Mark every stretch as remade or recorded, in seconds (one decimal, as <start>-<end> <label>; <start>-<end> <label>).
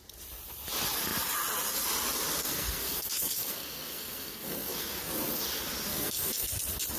0.0-2.4 recorded; 2.4-5.1 remade; 5.1-5.9 recorded; 5.9-6.5 remade; 6.5-7.0 recorded